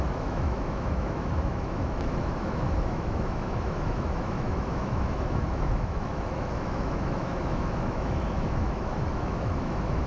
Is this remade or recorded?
remade